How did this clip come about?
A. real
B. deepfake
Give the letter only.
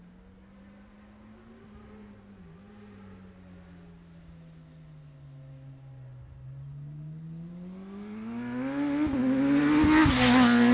A